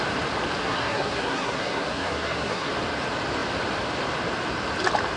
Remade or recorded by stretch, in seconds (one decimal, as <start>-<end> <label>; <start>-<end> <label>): 0.0-0.6 recorded; 0.6-2.7 remade; 2.7-5.2 recorded